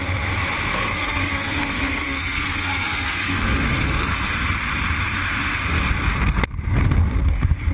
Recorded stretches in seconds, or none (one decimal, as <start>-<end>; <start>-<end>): 0.0-0.7; 4.1-7.7